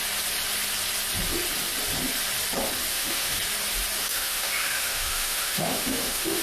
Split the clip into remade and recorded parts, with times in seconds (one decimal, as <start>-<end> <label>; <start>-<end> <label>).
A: 0.0-2.9 recorded; 2.9-3.4 remade; 3.4-4.0 recorded; 4.0-6.4 remade